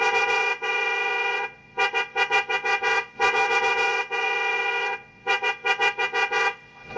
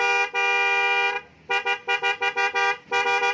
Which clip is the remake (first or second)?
first